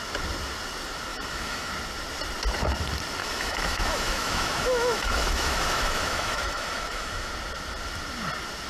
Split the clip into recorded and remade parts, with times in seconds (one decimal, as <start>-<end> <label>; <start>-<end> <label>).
0.0-1.1 recorded; 1.1-1.7 remade; 1.7-3.2 recorded; 3.2-7.3 remade; 7.3-8.7 recorded